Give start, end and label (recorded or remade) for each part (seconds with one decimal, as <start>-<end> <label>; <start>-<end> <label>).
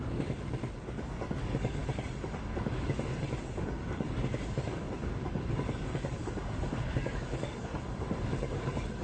0.0-9.0 remade